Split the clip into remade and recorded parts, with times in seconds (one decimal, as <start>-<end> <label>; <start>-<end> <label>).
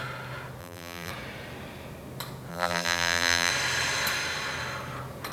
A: 0.0-0.6 recorded; 0.6-1.1 remade; 1.1-2.5 recorded; 2.5-3.5 remade; 3.5-5.3 recorded